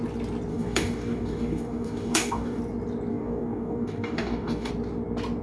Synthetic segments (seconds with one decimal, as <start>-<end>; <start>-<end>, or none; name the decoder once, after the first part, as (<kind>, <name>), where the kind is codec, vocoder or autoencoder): 0.5-2.6 (codec, DAC); 3.1-4.7